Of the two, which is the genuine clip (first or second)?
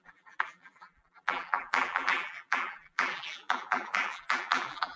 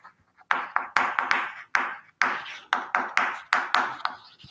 second